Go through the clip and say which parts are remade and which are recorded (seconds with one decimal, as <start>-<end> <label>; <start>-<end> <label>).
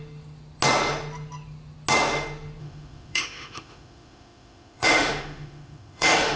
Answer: 0.0-2.6 recorded; 2.6-6.4 remade